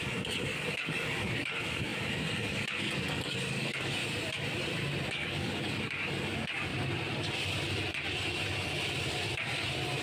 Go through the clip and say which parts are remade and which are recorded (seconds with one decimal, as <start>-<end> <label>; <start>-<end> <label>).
0.0-4.0 remade; 4.0-5.1 recorded; 5.1-6.7 remade; 6.7-10.0 recorded